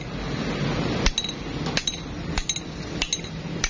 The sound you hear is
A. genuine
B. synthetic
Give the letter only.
A